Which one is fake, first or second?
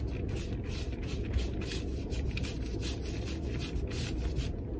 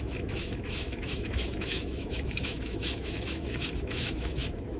second